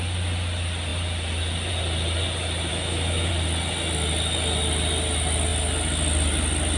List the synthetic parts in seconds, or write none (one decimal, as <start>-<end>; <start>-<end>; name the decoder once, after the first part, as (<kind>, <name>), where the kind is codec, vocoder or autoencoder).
2.7-3.3 (autoencoder, DAC-VAE)